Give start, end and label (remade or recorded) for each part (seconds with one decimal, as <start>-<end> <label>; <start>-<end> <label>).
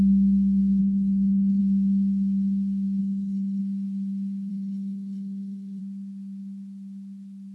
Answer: 0.0-0.8 recorded; 0.8-1.6 remade; 1.6-3.0 recorded; 3.0-3.6 remade; 3.6-4.5 recorded; 4.5-5.8 remade; 5.8-7.5 recorded